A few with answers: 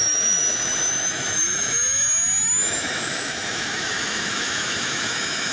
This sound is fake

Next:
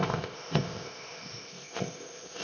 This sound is fake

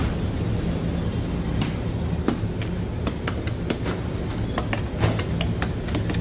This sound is real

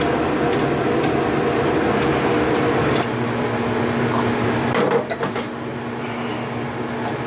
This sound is real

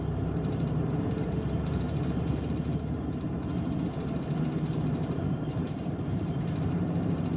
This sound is fake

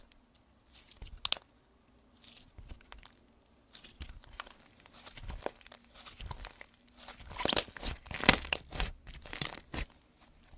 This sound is real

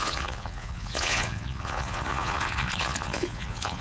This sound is fake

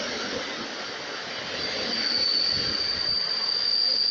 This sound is real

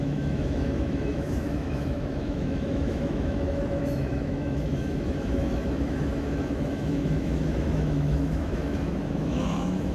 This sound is fake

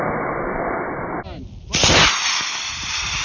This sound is real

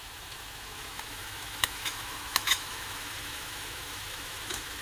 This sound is fake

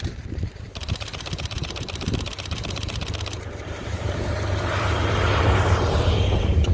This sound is fake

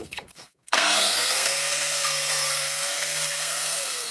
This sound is fake